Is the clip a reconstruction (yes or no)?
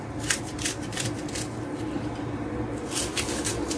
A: no